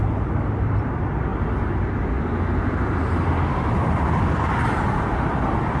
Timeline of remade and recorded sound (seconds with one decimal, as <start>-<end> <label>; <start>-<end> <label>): 0.0-5.8 recorded